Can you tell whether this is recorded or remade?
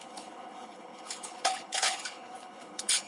remade